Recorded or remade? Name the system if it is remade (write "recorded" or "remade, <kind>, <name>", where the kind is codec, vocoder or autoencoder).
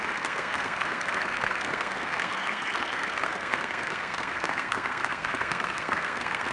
remade, codec, SNAC